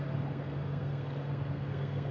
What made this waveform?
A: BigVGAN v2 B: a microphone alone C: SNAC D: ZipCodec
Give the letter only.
C